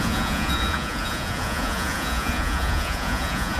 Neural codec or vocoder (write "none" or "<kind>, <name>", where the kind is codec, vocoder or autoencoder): vocoder, Vocos